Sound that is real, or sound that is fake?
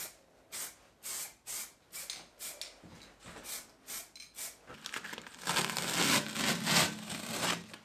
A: real